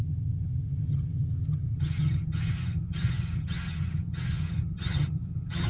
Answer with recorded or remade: remade